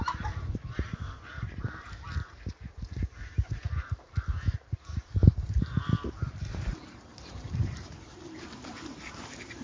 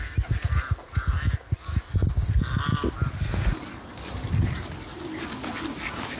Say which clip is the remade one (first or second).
first